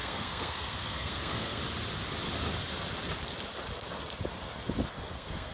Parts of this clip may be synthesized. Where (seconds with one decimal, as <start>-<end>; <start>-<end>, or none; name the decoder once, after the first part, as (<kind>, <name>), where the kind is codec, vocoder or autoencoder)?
0.0-1.6 (codec, SNAC); 4.9-5.5